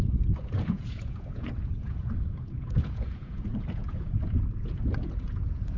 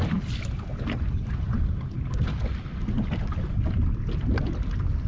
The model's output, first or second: first